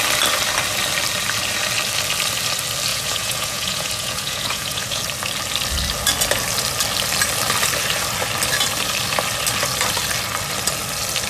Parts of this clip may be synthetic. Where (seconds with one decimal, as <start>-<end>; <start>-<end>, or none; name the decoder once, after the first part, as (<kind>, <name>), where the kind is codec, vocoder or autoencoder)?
2.9-5.0 (vocoder, Vocos)